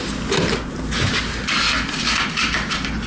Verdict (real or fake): real